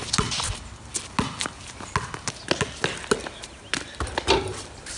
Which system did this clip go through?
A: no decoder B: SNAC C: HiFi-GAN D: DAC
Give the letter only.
A